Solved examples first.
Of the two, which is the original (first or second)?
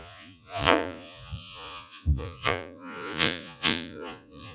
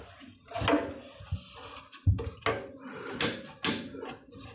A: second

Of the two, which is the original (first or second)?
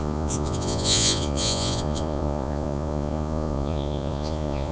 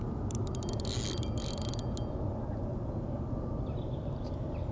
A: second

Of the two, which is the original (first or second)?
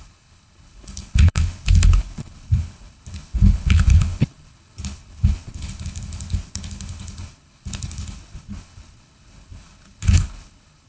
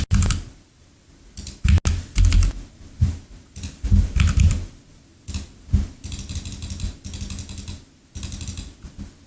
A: second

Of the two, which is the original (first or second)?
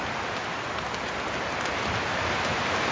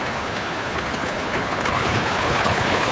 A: first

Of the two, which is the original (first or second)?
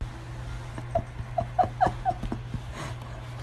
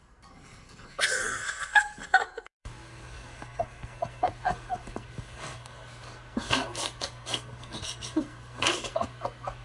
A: first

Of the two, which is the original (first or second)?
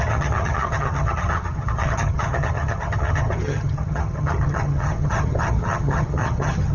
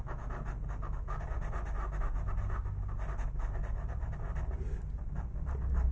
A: second